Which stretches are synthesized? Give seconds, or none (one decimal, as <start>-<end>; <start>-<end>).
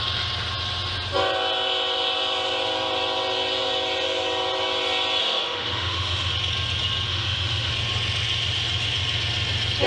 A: 5.2-6.3; 7.1-7.7